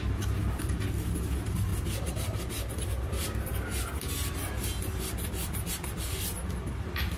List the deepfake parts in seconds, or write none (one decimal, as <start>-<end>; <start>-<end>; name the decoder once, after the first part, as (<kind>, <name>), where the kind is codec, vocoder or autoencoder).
none